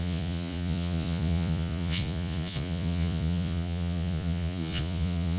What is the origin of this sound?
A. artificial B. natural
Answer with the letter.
A